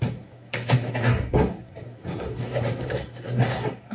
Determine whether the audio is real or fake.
fake